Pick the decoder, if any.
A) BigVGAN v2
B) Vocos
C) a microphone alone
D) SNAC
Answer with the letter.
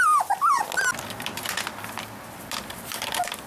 C